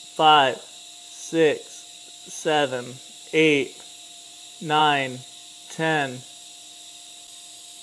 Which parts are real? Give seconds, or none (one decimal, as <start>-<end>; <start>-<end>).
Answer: 0.0-2.2; 4.8-7.8